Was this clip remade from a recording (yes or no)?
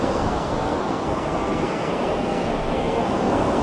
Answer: yes